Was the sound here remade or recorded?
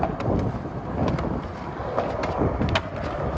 recorded